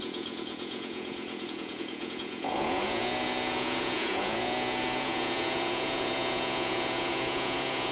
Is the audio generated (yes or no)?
yes